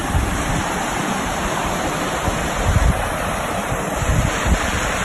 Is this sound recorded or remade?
recorded